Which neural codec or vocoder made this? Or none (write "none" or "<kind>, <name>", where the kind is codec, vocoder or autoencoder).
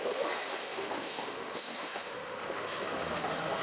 autoencoder, DAC-VAE